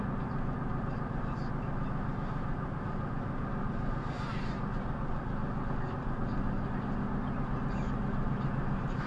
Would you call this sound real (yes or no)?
yes